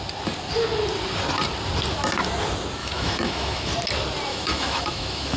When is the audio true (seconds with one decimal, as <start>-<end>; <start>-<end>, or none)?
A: 0.0-2.8; 3.7-4.3